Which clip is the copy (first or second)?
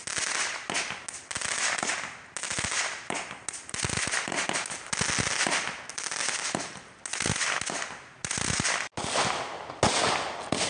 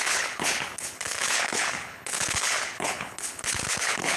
second